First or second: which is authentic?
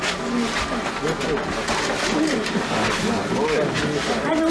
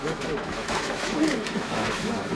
first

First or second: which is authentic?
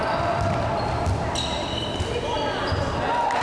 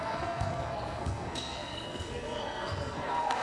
first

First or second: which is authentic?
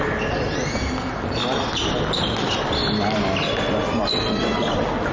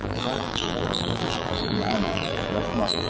first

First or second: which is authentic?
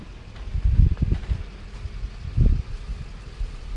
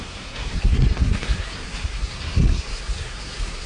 first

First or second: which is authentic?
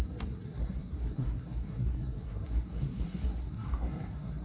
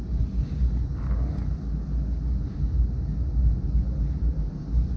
second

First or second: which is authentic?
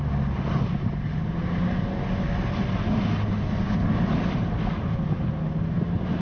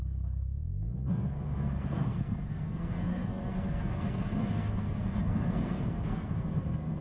first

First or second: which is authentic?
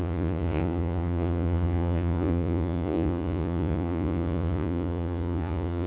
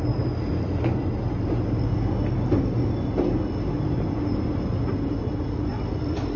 second